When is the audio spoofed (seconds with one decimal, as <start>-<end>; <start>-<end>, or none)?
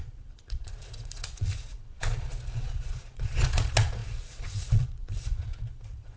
0.0-6.2